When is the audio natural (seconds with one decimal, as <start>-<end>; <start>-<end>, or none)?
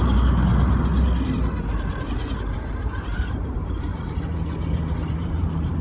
0.5-2.0; 3.9-5.1